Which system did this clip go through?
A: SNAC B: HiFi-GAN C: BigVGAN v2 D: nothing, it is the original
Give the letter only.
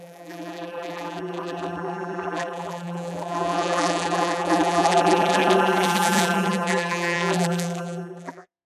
C